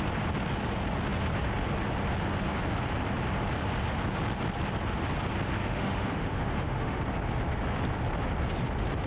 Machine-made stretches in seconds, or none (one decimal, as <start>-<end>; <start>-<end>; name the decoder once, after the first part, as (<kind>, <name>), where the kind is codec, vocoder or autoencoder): 5.6-7.0 (autoencoder, DAC-VAE)

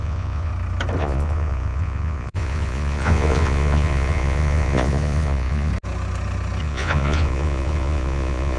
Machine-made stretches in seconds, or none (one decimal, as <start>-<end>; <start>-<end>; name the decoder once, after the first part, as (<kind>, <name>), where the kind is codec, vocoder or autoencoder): 0.0-0.5 (vocoder, Vocos); 1.0-5.7; 6.6-8.6

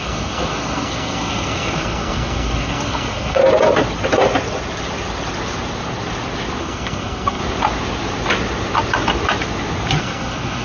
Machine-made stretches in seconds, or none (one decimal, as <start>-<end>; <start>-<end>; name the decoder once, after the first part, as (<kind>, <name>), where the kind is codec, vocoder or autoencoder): 0.0-3.4 (codec, SNAC); 6.6-7.4; 10.0-10.6

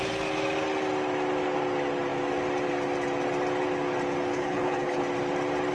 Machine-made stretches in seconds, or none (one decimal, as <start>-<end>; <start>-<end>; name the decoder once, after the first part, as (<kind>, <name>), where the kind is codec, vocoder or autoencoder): 4.3-5.0 (codec, HILCodec)